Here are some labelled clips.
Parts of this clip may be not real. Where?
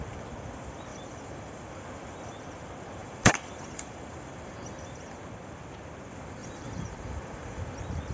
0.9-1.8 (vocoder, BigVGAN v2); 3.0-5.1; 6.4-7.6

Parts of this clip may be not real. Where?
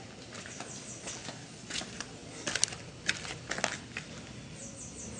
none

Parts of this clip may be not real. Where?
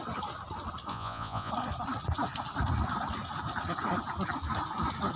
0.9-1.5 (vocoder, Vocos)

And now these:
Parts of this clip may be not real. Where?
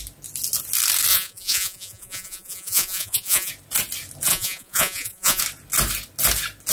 1.1-3.5 (vocoder, Vocos); 4.3-5.4